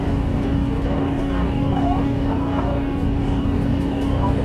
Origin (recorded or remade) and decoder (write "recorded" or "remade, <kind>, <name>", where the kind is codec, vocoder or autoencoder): remade, codec, DAC